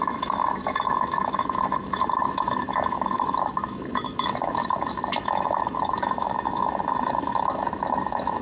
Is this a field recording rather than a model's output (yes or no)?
no